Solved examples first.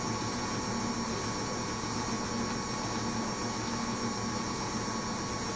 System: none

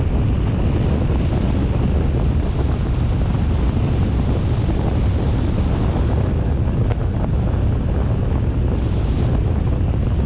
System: none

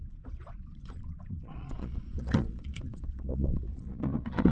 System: vocoder, Vocos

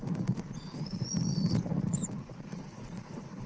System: vocoder, Vocos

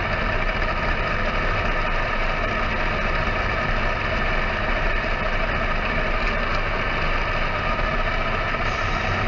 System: none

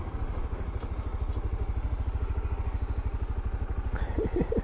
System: none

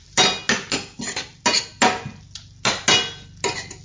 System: none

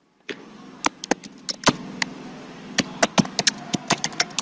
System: none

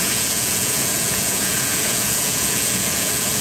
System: vocoder, Vocos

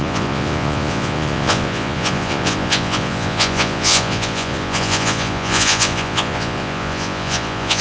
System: vocoder, Vocos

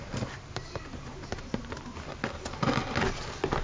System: none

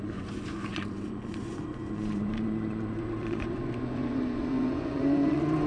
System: vocoder, Vocos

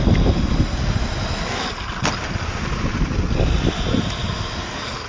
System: none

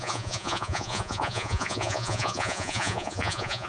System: vocoder, Vocos